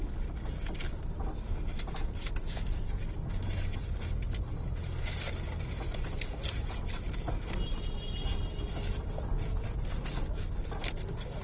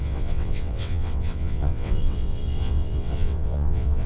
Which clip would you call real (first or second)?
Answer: first